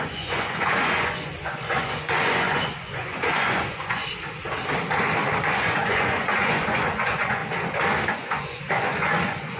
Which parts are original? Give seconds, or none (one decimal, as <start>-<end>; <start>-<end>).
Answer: 4.0-5.5; 7.4-8.1